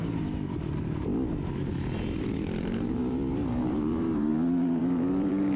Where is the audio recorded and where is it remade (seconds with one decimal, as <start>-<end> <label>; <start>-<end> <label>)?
0.0-1.1 remade; 1.1-2.6 recorded; 2.6-4.3 remade; 4.3-4.8 recorded; 4.8-5.6 remade